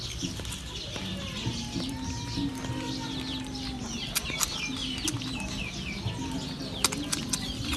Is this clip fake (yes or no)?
no